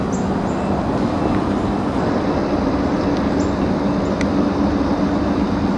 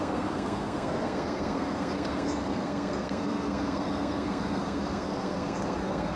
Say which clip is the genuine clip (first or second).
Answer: first